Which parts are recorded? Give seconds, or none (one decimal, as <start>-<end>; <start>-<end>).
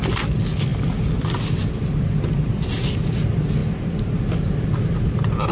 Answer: 0.0-5.5